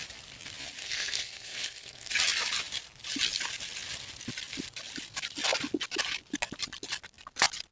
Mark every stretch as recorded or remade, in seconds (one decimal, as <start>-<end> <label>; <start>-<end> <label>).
0.0-0.8 recorded; 0.8-2.1 remade; 2.1-7.7 recorded